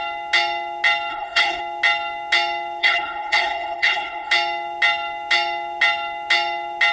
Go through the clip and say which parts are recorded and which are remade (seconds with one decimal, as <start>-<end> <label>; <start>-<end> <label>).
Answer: 0.0-1.1 recorded; 1.1-1.6 remade; 1.6-2.8 recorded; 2.8-4.3 remade; 4.3-6.9 recorded